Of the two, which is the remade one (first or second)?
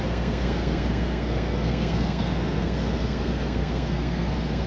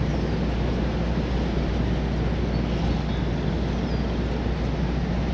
first